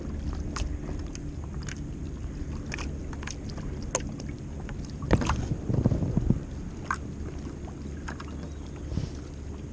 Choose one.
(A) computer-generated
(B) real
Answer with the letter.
B